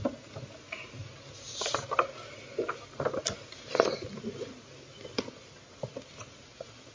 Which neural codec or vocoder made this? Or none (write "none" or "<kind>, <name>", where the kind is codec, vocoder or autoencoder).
none